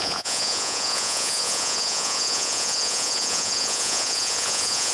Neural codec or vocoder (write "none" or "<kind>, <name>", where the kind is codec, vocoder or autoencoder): vocoder, Vocos